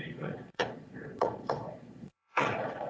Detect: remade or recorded remade